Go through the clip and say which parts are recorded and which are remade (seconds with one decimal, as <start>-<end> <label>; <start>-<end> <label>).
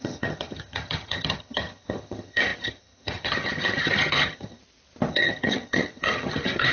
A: 0.0-4.6 remade; 4.6-5.1 recorded; 5.1-6.7 remade